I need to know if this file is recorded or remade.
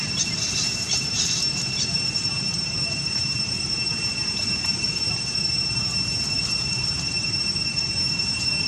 remade